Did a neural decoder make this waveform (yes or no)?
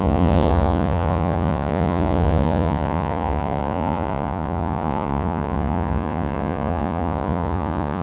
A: yes